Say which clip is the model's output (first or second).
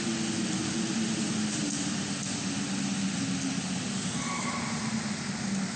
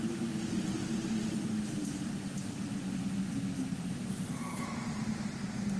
second